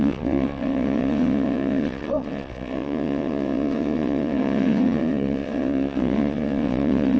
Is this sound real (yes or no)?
no